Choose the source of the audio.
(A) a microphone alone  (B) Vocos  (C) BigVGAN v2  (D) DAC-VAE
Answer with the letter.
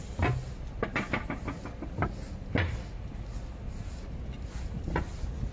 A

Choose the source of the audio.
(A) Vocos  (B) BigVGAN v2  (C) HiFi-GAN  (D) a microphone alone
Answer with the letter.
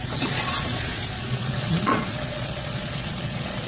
A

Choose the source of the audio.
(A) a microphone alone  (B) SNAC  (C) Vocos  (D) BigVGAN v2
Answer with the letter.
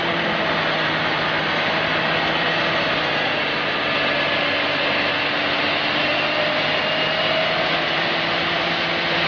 A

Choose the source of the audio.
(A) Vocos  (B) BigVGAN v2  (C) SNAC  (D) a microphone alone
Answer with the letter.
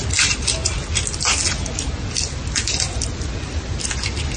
D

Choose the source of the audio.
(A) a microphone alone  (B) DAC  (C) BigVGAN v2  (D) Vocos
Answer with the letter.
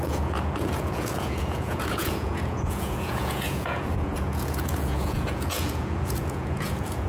D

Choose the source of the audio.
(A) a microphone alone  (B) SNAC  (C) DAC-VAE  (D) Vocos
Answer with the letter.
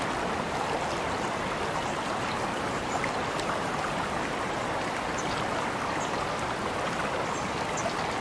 A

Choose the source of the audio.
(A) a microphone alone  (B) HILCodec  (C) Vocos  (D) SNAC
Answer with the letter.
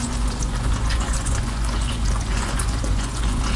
C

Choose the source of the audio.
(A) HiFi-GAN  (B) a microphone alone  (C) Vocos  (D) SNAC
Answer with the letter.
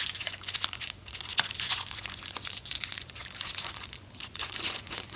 C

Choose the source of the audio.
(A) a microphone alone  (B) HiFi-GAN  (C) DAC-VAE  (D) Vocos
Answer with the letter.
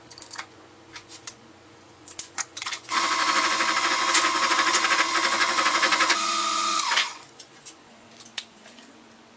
D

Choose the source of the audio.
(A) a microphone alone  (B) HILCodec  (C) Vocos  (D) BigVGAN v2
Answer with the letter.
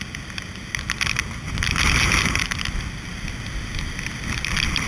A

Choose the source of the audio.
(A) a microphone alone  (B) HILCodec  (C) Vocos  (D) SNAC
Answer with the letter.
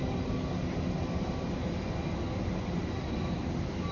A